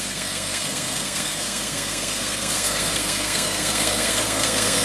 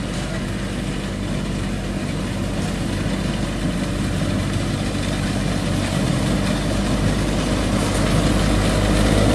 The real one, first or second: second